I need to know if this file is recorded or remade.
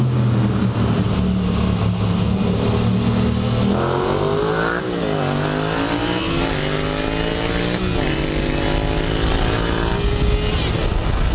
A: recorded